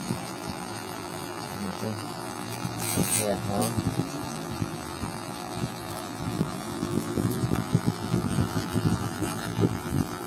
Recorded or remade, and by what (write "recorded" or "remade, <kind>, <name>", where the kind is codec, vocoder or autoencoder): remade, vocoder, BigVGAN v2